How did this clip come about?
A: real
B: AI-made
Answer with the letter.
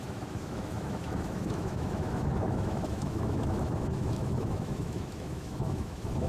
B